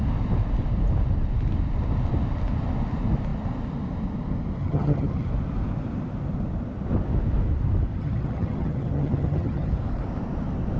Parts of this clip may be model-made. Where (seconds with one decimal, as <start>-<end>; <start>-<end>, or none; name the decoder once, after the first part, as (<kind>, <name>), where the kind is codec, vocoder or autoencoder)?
4.6-5.3 (vocoder, HiFi-GAN); 7.9-9.7